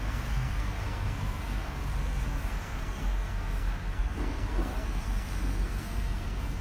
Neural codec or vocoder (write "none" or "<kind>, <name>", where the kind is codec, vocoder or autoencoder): codec, SNAC